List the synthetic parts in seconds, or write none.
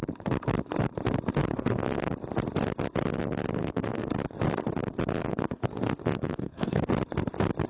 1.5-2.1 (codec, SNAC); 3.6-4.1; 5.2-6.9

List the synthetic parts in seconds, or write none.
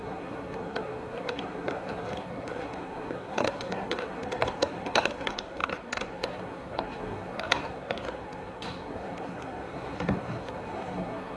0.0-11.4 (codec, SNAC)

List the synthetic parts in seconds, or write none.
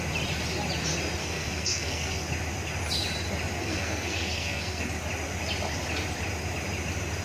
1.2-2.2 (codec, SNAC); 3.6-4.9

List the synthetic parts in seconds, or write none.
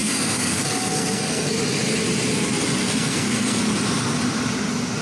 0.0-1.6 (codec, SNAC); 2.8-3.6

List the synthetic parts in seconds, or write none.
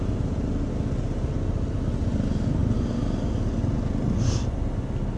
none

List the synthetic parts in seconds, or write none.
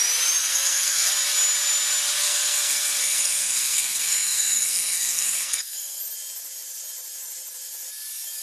0.4-1.1 (codec, SNAC); 2.2-6.0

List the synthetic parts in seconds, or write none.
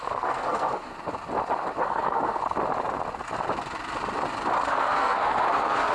0.0-0.9 (codec, SNAC); 1.8-2.4; 4.7-5.9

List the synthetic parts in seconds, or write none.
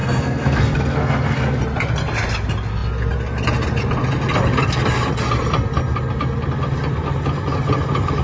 0.0-1.6 (codec, SNAC)